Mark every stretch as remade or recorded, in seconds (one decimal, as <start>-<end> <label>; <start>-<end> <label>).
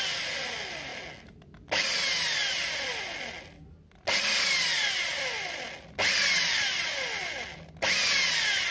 0.0-8.7 recorded